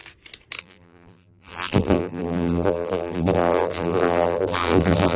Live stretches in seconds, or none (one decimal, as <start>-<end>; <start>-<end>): 0.0-0.6